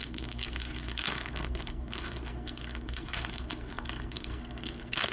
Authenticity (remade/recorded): remade